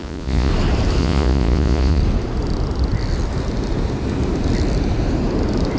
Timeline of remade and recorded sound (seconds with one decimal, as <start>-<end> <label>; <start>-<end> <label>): 0.0-0.5 remade; 0.5-1.0 recorded; 1.0-2.0 remade; 2.0-5.8 recorded